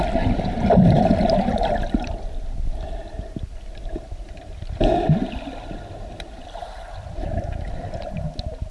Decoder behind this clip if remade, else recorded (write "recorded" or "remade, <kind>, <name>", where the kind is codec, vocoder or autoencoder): recorded